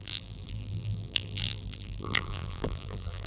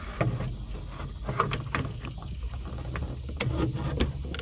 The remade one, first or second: first